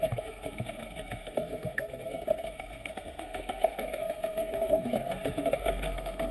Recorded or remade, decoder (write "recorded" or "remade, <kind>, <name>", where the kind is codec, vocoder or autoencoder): remade, codec, SNAC